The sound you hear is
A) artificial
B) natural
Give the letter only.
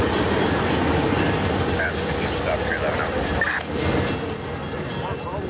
B